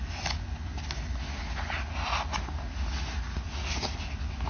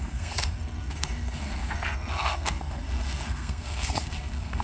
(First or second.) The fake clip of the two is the second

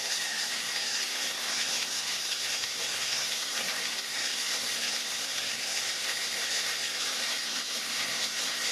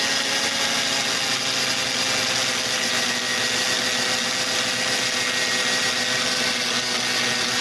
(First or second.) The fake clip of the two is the first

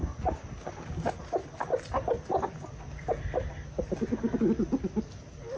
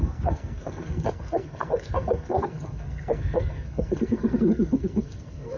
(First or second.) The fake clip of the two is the second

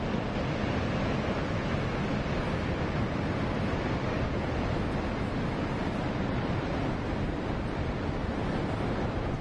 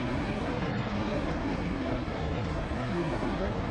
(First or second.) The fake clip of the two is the second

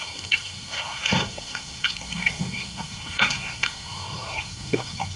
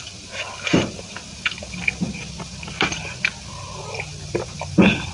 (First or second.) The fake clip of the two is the first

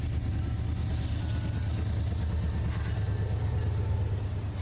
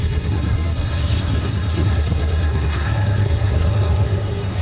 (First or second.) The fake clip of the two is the second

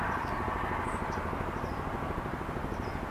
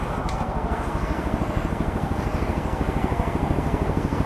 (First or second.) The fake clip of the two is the second